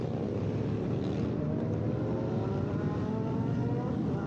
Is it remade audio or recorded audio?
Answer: recorded